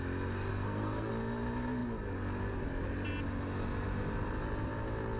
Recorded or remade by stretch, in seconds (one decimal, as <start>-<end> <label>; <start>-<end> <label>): 0.0-0.5 recorded; 0.5-1.1 remade; 1.1-5.2 recorded